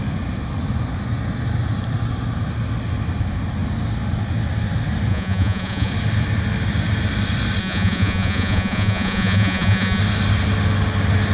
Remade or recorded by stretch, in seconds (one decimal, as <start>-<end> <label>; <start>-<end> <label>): 0.0-5.1 recorded; 5.1-5.9 remade; 5.9-7.6 recorded; 7.6-10.0 remade; 10.0-11.3 recorded